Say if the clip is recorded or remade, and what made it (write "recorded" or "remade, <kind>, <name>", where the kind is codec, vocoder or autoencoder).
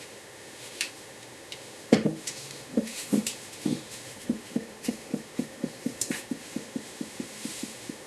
remade, autoencoder, DAC-VAE